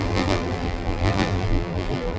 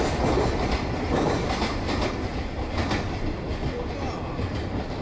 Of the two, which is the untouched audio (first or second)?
second